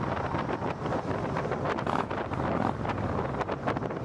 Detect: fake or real fake